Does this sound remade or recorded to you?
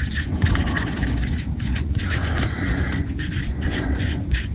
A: remade